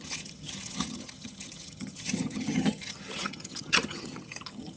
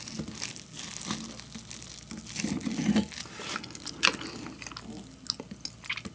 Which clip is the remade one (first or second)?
first